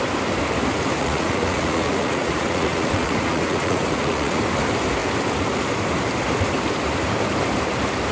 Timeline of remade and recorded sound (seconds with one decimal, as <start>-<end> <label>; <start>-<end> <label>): 0.0-1.0 recorded; 1.0-4.4 remade; 4.4-8.1 recorded